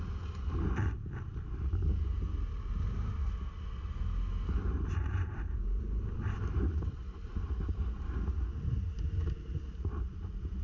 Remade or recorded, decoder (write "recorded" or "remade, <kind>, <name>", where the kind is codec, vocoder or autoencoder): recorded